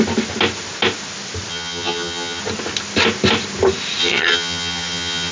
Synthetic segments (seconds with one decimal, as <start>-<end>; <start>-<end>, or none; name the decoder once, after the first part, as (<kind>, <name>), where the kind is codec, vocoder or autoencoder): 1.5-2.4 (vocoder, HiFi-GAN); 4.0-5.3